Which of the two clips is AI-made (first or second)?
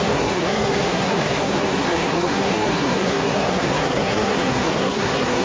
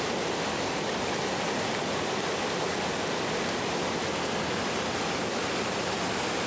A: first